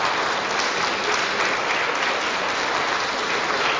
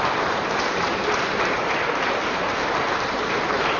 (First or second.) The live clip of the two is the first